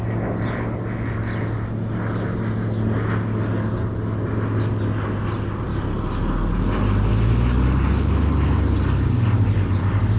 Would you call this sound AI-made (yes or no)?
no